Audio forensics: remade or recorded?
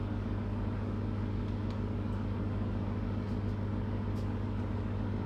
remade